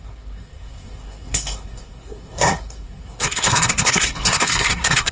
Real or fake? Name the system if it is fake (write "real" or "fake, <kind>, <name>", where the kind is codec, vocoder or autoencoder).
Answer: fake, codec, SNAC